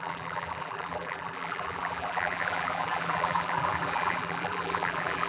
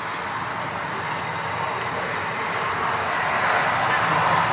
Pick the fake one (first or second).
first